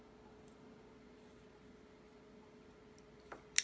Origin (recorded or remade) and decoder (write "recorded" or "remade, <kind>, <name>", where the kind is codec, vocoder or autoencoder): recorded